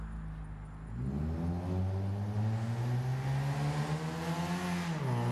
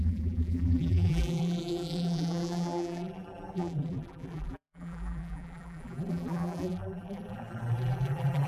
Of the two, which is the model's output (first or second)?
second